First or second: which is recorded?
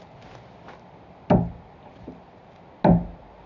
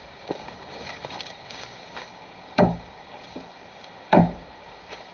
first